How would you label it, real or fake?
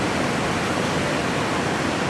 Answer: real